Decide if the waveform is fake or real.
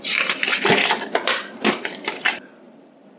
fake